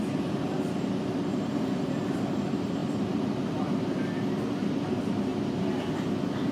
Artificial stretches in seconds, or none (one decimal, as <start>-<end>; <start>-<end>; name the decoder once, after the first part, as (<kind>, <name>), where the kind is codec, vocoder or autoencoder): 2.8-3.8 (vocoder, BigVGAN v2)